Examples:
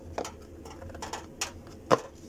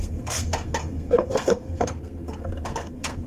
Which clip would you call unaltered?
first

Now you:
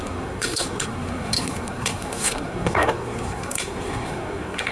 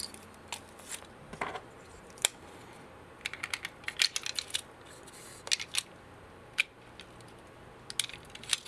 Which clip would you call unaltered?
second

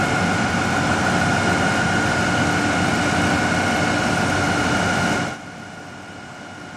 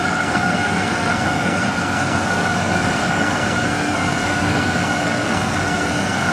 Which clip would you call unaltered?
first